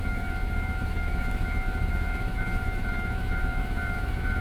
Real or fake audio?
fake